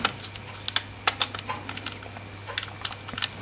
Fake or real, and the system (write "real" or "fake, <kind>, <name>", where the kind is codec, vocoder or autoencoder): real